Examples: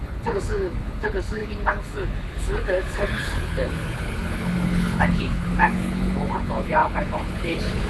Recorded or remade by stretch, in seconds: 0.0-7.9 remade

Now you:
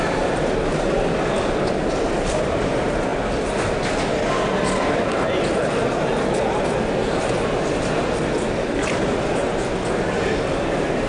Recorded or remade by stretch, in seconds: 0.0-11.1 recorded

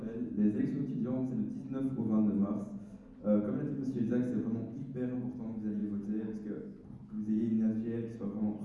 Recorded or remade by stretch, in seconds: 0.0-8.6 recorded

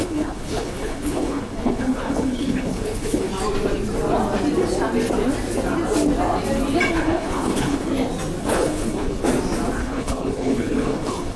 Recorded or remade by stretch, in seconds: 0.0-3.3 remade; 3.3-6.9 recorded; 6.9-7.9 remade; 7.9-8.4 recorded; 8.4-9.2 remade; 9.2-9.8 recorded; 9.8-11.4 remade

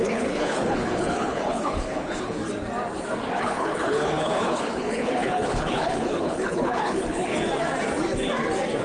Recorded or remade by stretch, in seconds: 0.0-2.4 remade; 2.4-3.4 recorded; 3.4-7.3 remade; 7.3-8.8 recorded